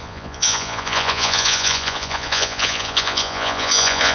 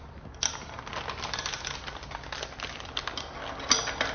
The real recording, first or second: second